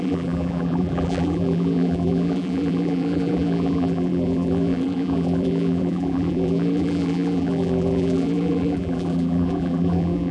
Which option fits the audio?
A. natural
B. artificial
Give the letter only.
B